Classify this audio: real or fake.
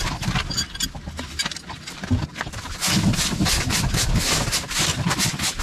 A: real